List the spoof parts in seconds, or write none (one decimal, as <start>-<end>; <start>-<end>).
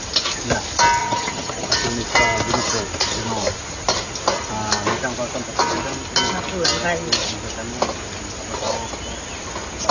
1.0-1.7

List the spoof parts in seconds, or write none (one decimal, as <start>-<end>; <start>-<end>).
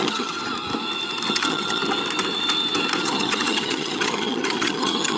0.0-0.4; 1.3-1.8; 3.0-5.2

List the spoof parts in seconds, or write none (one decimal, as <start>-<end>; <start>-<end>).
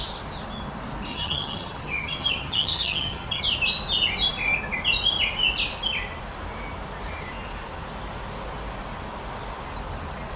1.1-3.4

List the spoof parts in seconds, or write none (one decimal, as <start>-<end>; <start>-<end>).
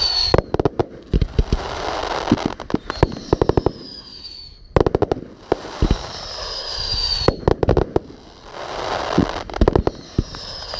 none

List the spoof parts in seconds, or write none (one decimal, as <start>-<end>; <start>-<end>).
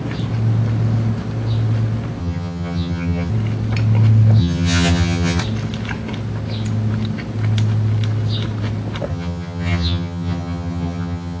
2.2-3.3; 4.4-5.4; 9.1-11.4